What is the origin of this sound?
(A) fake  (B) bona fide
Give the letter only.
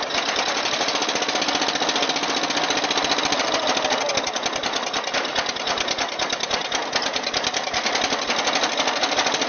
B